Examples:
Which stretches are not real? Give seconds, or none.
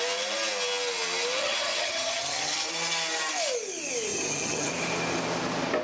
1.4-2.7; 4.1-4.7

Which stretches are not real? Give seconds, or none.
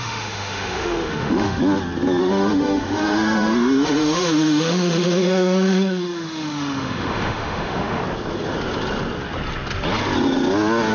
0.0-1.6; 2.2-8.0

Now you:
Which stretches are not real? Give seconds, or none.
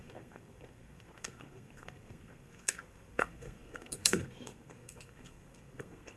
0.0-6.2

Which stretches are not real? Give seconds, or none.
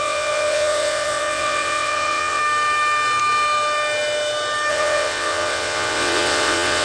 0.0-2.4; 4.7-6.8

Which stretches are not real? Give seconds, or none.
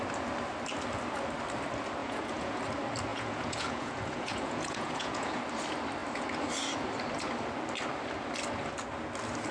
2.0-2.6; 3.1-5.4